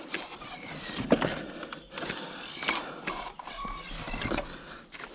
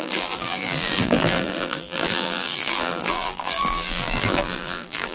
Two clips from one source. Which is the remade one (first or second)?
second